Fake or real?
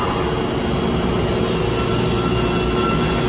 real